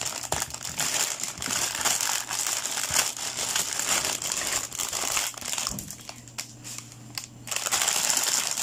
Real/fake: real